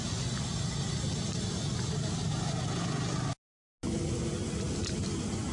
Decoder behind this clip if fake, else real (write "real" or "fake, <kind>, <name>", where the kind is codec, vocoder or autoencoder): real